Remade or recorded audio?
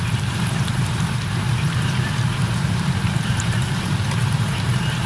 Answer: remade